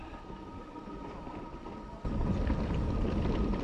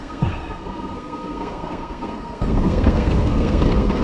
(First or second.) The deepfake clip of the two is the second